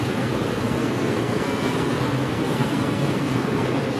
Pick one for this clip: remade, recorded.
remade